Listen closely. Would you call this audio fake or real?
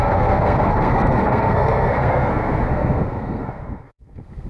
fake